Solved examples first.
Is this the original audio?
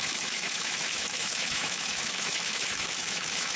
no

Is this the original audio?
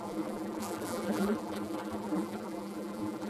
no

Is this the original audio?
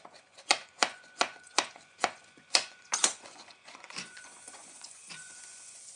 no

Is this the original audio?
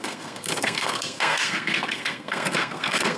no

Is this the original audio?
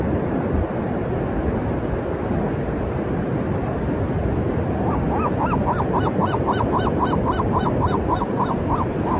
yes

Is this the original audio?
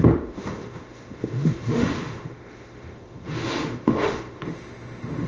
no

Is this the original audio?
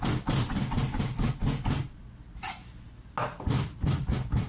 yes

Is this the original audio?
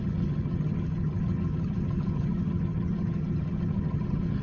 no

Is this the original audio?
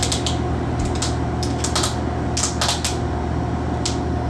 yes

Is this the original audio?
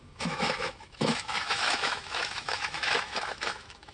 no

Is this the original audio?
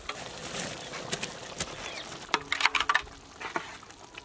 yes